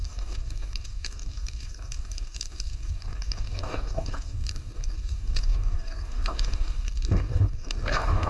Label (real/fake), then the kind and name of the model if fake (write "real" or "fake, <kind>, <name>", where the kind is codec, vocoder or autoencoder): fake, codec, DAC